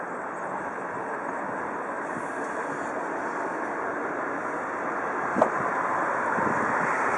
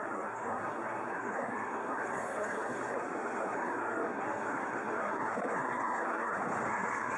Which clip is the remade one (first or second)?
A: second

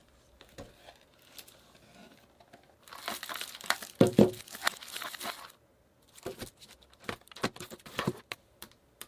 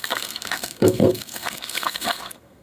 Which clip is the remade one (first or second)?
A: second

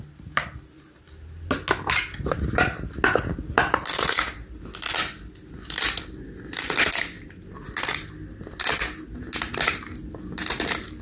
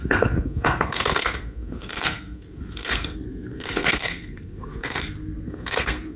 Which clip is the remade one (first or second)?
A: second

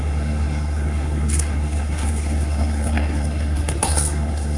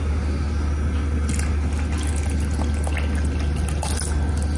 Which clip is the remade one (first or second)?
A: first